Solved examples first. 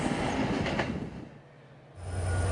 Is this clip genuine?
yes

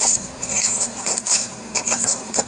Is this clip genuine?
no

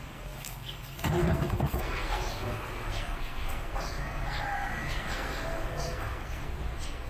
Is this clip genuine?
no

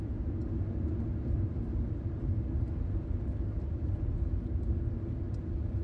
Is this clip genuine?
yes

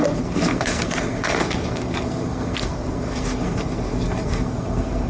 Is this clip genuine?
no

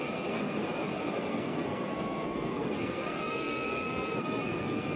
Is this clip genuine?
no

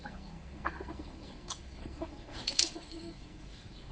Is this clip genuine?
no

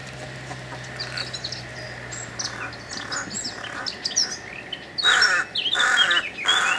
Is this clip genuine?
yes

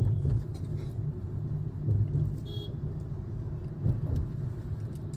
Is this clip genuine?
yes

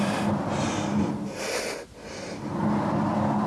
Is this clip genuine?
yes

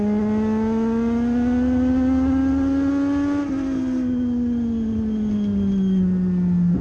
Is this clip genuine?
yes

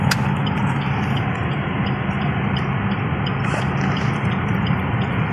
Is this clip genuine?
yes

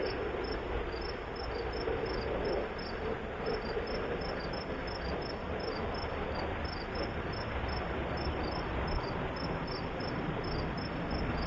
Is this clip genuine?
yes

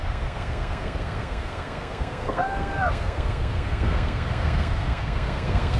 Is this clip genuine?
no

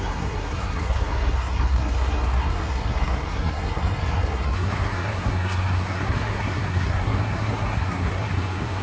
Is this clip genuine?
no